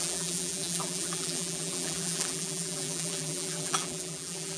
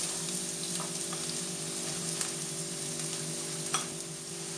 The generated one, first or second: first